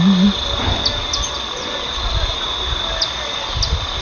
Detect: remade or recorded recorded